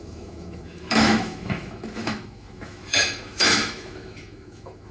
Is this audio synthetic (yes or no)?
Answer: yes